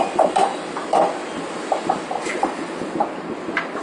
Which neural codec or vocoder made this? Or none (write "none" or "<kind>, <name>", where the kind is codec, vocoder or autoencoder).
none